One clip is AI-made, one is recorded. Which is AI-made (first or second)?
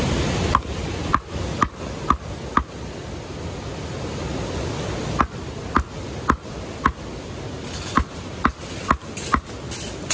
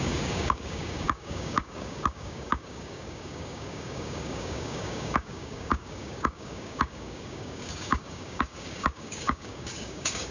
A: second